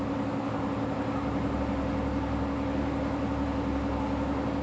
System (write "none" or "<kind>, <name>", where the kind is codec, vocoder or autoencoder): none